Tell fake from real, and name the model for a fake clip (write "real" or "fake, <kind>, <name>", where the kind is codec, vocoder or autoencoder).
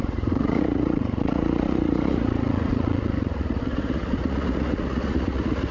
fake, vocoder, Vocos